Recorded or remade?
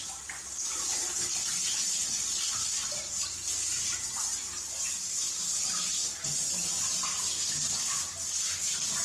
recorded